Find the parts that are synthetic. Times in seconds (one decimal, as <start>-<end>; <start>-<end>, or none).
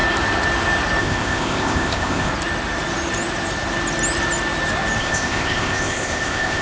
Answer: 1.0-2.3; 5.0-6.6